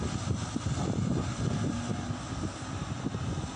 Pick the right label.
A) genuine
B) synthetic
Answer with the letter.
A